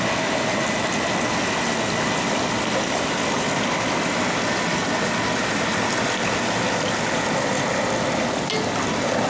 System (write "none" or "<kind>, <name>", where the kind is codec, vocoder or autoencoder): none